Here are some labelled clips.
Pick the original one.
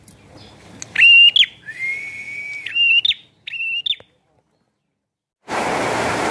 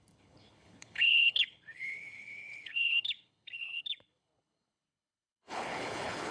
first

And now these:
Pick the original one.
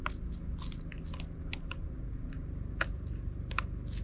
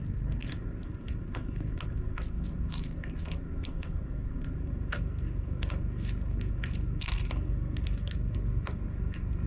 first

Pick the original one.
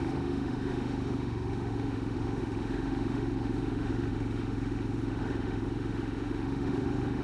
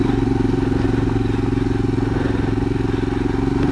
second